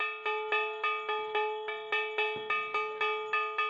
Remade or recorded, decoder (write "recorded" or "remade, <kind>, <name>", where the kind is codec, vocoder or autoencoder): recorded